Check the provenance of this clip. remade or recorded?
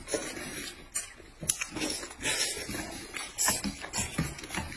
recorded